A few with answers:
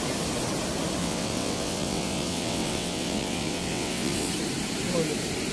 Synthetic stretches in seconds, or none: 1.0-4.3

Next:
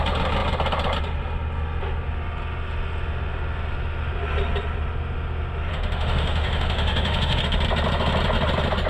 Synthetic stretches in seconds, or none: 5.7-7.4

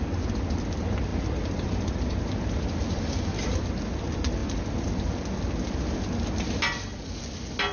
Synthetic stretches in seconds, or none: 1.1-3.6

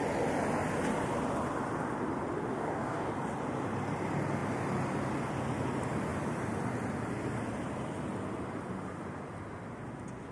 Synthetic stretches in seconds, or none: 2.5-3.1

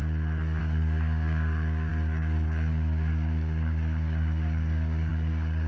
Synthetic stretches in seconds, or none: 0.6-5.7

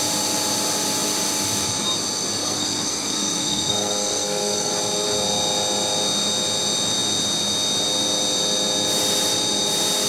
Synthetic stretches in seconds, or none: 2.4-4.7

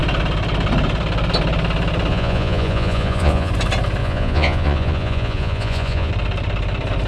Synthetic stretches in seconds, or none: 2.1-3.5; 4.0-6.1

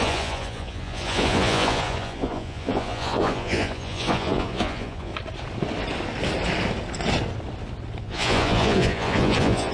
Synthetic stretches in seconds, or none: 0.0-5.1; 8.0-9.7